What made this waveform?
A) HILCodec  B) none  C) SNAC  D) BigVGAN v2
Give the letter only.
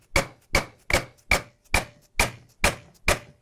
B